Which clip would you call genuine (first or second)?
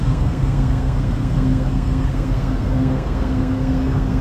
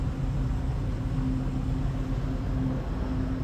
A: second